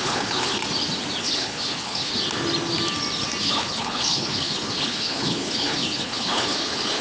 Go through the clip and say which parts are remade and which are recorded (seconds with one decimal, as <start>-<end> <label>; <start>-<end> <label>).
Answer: 0.0-0.6 remade; 0.6-1.2 recorded; 1.2-2.1 remade; 2.1-3.4 recorded; 3.4-7.0 remade